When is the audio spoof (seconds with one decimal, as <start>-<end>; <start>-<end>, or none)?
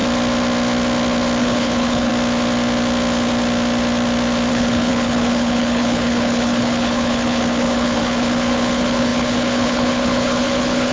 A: 1.4-2.1; 4.5-10.9